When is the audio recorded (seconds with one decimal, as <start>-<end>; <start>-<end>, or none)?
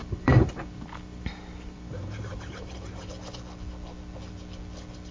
3.1-5.1